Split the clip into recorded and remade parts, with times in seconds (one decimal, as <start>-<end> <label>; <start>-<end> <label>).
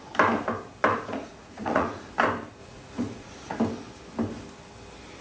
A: 0.0-0.9 recorded; 0.9-2.1 remade; 2.1-2.6 recorded; 2.6-3.6 remade; 3.6-5.2 recorded